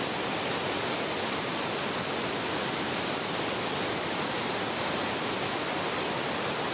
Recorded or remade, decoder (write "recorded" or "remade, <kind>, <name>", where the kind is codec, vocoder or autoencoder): recorded